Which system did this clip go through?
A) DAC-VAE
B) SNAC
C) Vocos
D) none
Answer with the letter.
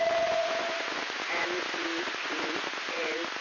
C